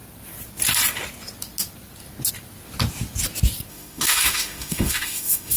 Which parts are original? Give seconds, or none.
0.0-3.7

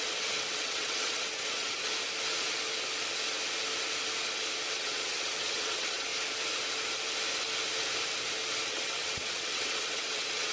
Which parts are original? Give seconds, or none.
1.9-4.8; 6.1-8.7

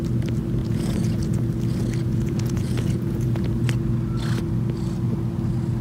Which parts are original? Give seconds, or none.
0.0-0.6; 1.4-2.0; 3.5-5.8

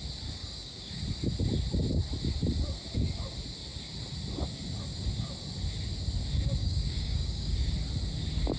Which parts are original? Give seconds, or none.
0.0-0.4; 1.0-6.6; 7.7-8.6

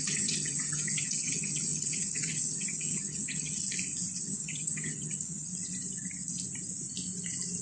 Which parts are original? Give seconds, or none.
3.6-4.2; 5.5-7.6

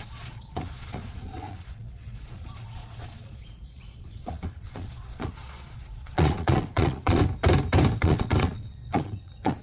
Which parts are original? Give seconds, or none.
7.2-8.0

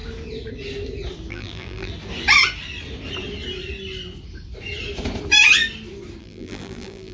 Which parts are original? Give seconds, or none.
0.0-1.3; 1.9-6.2